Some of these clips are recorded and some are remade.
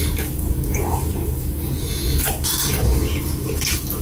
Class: remade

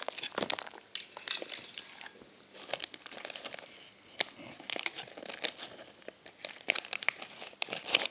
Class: recorded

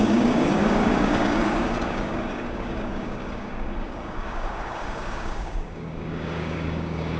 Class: remade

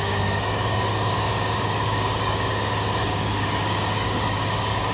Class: remade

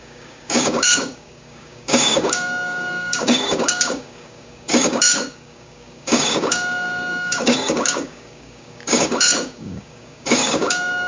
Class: remade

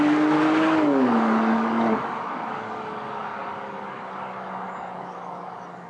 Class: remade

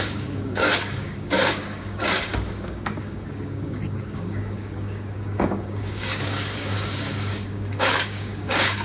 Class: remade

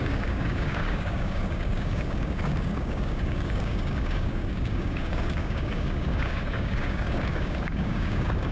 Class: remade